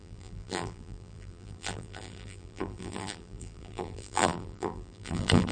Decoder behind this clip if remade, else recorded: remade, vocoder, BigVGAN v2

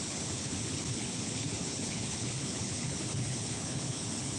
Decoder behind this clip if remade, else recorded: remade, codec, HILCodec